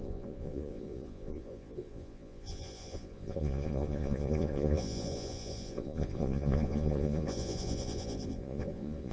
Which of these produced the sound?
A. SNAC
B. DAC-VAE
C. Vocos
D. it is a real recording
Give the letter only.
C